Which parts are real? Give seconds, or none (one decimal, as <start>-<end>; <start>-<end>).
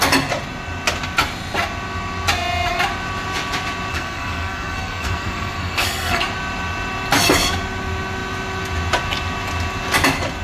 0.0-3.9; 6.2-10.4